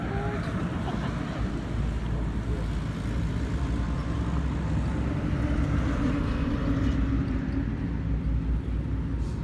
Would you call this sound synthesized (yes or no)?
no